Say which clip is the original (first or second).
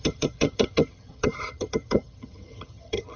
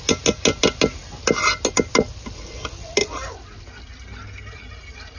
second